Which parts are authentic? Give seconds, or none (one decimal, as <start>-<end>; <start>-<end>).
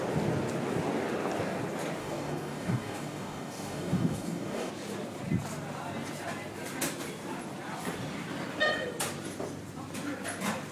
0.0-2.0; 4.7-10.7